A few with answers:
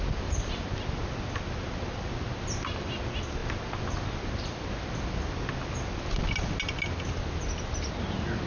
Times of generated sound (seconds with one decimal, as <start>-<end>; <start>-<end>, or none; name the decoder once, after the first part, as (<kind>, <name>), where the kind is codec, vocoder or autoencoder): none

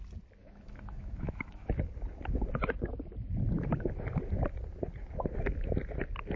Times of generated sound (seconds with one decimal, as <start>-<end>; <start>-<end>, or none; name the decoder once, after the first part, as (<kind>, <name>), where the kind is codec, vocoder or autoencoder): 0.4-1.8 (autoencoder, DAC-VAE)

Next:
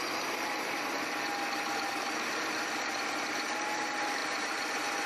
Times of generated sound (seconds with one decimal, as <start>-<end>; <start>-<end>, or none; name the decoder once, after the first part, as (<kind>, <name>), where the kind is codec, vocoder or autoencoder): 0.0-5.1 (vocoder, BigVGAN v2)

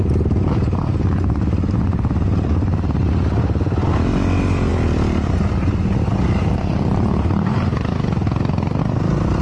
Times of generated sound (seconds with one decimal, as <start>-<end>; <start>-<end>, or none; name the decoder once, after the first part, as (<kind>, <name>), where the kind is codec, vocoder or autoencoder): none

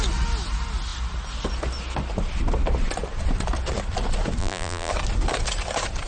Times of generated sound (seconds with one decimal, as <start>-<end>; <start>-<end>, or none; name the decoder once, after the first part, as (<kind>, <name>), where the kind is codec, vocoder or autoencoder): 4.4-4.9 (vocoder, BigVGAN v2)

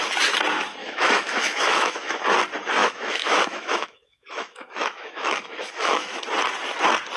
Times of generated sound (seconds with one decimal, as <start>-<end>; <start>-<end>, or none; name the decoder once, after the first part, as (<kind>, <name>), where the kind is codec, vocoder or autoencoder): 0.8-2.2 (autoencoder, DAC-VAE); 2.8-6.2